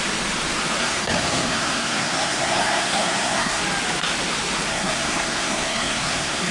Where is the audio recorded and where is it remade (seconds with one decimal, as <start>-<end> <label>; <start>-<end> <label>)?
0.0-0.8 recorded; 0.8-3.6 remade; 3.6-4.7 recorded; 4.7-6.5 remade